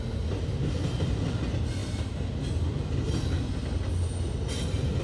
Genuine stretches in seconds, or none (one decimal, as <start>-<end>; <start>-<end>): 0.0-5.0